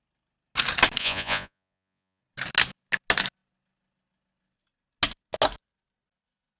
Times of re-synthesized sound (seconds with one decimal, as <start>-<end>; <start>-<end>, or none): 1.0-2.2

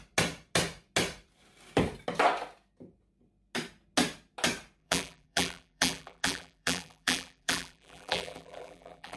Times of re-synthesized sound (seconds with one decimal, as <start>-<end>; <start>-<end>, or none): 4.8-9.2